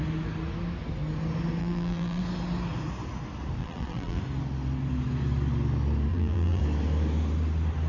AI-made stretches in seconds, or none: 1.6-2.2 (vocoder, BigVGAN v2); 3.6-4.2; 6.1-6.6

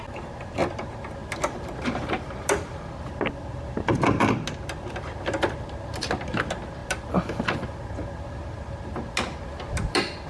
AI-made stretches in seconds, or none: none